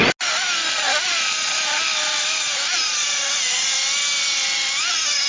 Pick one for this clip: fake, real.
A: real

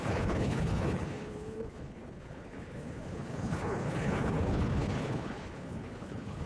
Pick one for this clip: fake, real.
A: fake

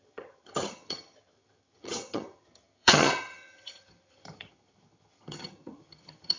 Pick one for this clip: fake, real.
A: fake